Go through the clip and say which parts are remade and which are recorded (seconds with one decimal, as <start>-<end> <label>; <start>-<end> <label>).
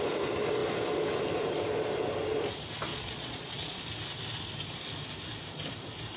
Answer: 0.0-2.9 recorded; 2.9-3.8 remade; 3.8-6.2 recorded